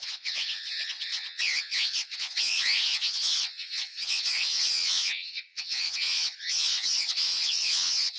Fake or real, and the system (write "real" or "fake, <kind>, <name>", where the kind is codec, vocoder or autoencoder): fake, vocoder, WaveNeXt